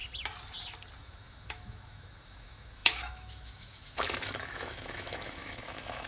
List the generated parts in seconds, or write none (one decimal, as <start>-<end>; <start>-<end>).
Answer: 1.0-6.1